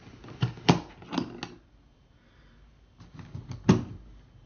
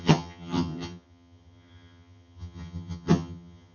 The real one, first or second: first